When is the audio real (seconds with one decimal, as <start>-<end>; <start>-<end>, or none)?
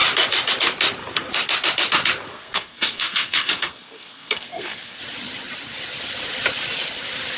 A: 0.0-2.3; 5.0-7.4